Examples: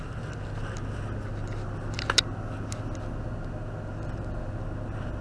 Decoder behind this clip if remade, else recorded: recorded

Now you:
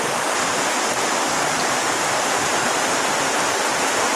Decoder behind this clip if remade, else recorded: recorded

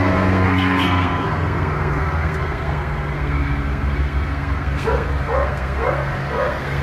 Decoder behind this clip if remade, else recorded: remade, codec, SNAC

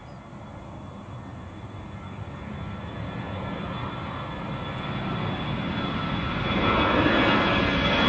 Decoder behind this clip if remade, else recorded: recorded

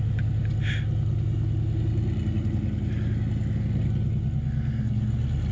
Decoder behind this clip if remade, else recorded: recorded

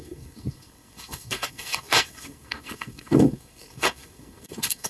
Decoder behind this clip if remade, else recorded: remade, codec, SNAC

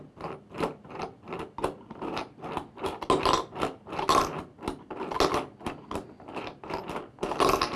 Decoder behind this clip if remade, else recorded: recorded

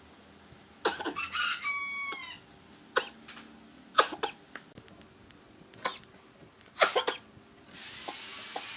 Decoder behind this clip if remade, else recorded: recorded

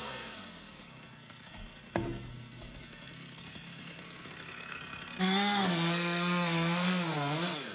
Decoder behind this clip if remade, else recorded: remade, codec, SNAC